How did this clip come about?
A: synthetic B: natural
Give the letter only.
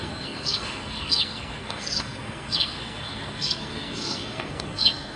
A